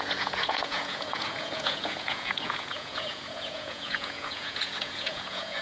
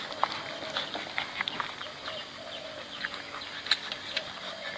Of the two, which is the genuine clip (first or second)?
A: second